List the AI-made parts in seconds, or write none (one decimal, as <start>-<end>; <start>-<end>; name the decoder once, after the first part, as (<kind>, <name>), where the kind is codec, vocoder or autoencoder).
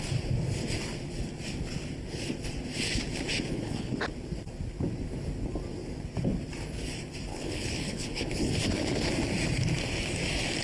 3.5-4.1 (codec, HILCodec); 7.3-9.1